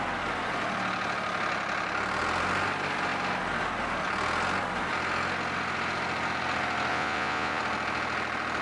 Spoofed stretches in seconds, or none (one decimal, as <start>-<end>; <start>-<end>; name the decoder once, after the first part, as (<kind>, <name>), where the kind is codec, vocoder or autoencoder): 6.9-7.6 (vocoder, Vocos)